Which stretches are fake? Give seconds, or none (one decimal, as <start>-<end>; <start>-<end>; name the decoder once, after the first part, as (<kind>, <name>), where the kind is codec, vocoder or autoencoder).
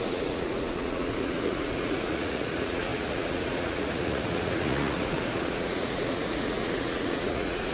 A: 0.0-7.7 (vocoder, Vocos)